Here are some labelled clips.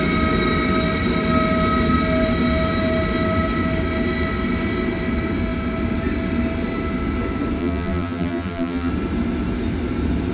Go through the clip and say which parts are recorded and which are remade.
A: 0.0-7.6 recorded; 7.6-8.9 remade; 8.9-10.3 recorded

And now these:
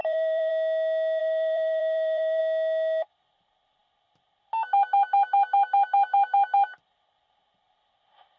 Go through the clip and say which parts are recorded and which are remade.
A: 0.0-0.5 remade; 0.5-1.2 recorded; 1.2-2.4 remade; 2.4-8.4 recorded